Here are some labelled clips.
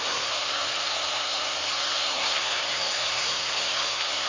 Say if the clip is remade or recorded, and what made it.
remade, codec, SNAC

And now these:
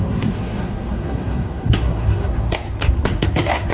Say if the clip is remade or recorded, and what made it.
remade, codec, SNAC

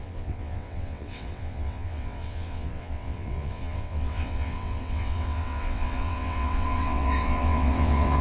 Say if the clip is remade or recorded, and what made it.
remade, vocoder, WaveNeXt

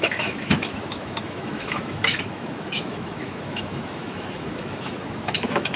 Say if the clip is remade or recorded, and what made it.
remade, autoencoder, DAC-VAE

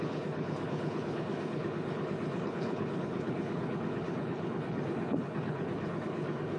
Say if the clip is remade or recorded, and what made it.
remade, codec, HILCodec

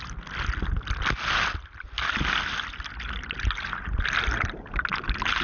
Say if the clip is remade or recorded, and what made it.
recorded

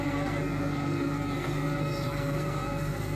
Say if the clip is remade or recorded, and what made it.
remade, codec, SNAC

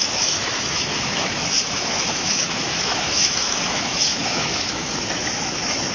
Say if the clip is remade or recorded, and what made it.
remade, autoencoder, DAC-VAE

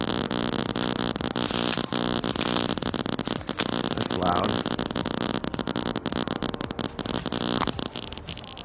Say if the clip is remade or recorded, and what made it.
recorded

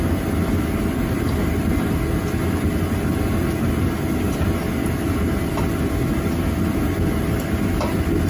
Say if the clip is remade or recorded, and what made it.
recorded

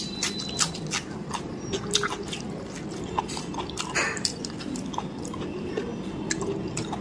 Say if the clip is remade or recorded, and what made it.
recorded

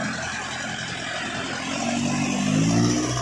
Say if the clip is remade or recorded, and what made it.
recorded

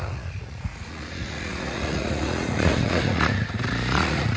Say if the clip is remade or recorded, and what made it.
remade, vocoder, Vocos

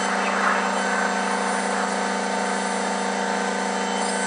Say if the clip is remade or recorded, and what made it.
recorded